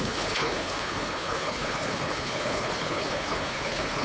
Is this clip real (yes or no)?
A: no